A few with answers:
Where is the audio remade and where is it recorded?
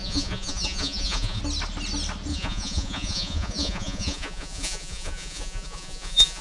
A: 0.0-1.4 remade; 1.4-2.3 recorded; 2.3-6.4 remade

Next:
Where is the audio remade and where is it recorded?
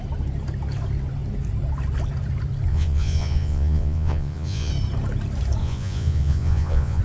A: 0.0-2.7 recorded; 2.7-4.7 remade; 4.7-5.6 recorded; 5.6-7.0 remade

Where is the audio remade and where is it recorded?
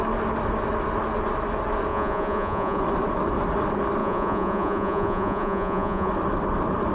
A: 0.0-1.9 recorded; 1.9-2.8 remade; 2.8-4.0 recorded; 4.0-6.1 remade; 6.1-6.9 recorded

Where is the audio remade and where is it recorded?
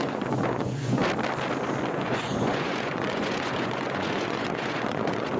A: 0.0-1.0 remade; 1.0-1.9 recorded; 1.9-5.4 remade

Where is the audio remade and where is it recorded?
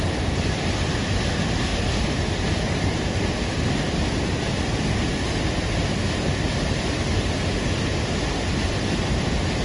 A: 0.0-9.6 recorded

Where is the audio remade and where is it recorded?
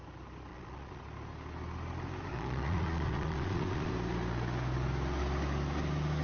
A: 0.0-0.5 recorded; 0.5-1.0 remade; 1.0-2.3 recorded; 2.3-3.9 remade; 3.9-6.2 recorded